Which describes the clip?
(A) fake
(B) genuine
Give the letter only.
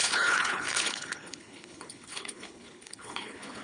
A